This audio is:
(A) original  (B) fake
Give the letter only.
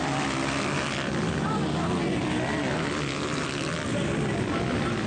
A